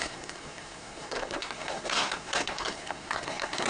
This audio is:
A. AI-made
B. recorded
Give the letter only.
A